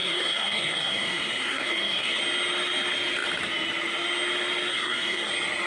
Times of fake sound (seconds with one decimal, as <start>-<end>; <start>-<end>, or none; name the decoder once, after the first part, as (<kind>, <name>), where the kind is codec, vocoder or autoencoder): 0.0-2.2 (codec, SNAC); 4.7-5.3